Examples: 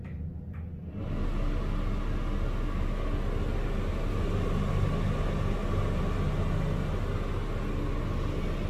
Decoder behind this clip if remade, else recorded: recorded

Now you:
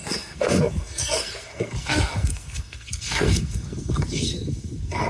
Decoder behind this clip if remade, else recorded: remade, codec, SNAC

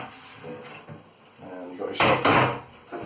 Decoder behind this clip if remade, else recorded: recorded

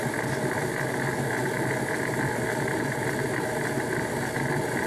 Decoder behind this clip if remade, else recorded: recorded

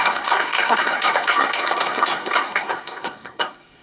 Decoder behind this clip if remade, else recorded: remade, codec, SNAC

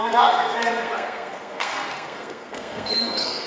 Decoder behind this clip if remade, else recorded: remade, codec, SNAC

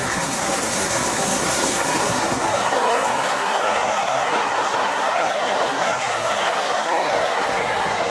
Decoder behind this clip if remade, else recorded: remade, codec, SNAC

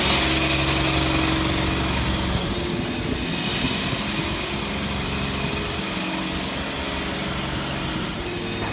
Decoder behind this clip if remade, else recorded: recorded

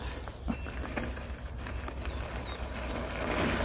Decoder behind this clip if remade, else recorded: recorded